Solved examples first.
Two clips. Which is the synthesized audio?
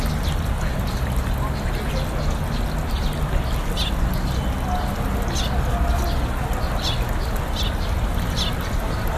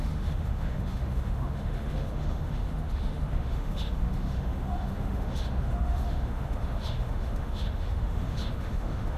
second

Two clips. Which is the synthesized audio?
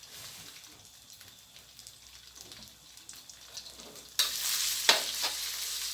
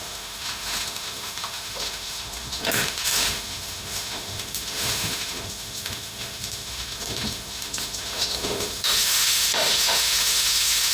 second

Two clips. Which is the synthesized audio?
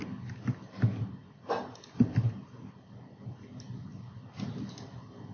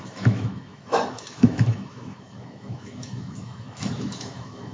second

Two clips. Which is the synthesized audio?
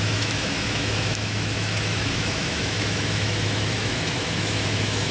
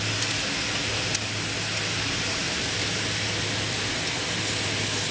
first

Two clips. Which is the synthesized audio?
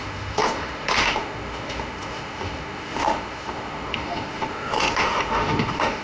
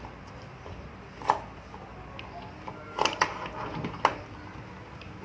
first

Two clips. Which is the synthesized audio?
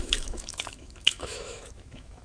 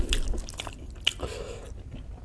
first